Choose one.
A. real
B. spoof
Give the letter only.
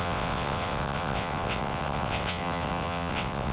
B